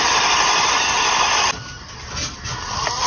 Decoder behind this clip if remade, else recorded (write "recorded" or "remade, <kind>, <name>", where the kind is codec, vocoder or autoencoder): recorded